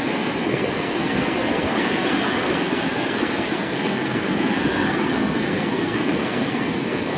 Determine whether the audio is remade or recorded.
remade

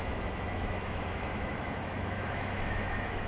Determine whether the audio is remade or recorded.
remade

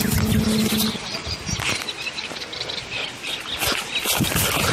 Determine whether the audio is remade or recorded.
remade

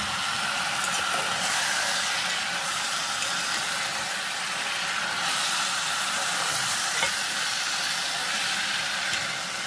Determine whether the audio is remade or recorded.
recorded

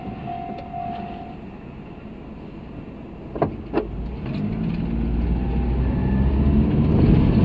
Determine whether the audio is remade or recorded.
recorded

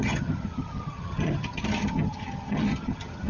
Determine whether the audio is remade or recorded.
remade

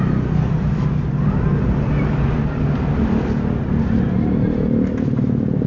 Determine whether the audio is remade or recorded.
recorded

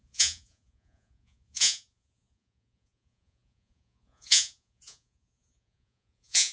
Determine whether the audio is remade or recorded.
remade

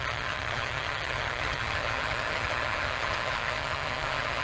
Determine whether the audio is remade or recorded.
remade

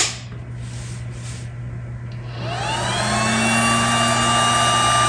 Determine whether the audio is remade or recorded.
recorded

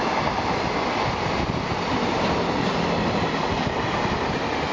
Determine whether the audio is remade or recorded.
recorded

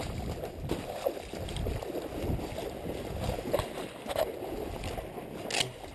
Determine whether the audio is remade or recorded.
recorded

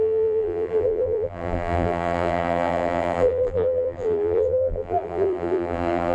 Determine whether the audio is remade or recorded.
remade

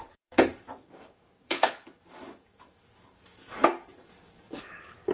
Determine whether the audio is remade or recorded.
remade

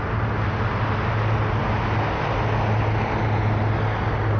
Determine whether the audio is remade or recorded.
recorded